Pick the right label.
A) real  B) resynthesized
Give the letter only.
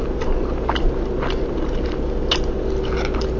A